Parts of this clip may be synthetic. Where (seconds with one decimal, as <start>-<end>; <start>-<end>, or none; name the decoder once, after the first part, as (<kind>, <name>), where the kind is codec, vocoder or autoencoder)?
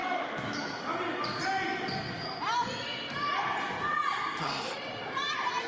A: 0.0-0.8 (autoencoder, DAC-VAE)